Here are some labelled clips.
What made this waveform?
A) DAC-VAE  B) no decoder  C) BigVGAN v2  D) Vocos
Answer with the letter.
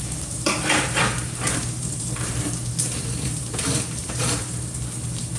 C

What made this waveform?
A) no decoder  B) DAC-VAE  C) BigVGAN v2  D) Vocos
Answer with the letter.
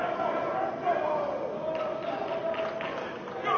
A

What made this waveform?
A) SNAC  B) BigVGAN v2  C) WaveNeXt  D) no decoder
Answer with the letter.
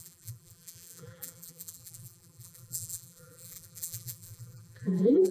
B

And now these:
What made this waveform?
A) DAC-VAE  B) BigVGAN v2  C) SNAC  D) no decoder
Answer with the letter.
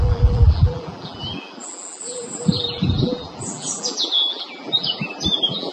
B